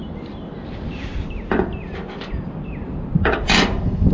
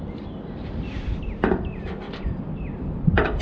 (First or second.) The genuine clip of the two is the first